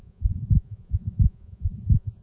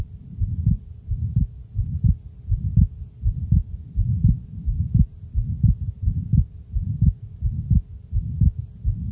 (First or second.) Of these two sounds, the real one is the second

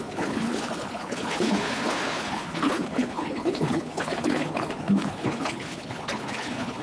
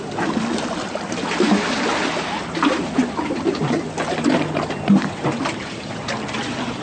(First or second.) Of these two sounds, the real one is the second